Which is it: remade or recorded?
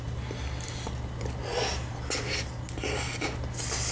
recorded